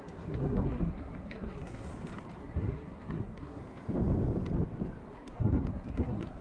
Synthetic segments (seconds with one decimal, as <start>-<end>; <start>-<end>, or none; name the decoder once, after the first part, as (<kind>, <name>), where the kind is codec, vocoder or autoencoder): 0.0-1.9 (codec, SNAC); 2.4-3.6; 5.1-6.4